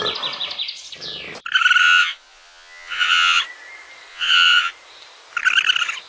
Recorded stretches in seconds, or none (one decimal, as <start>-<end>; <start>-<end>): 0.0-1.8; 3.4-4.1; 4.7-6.1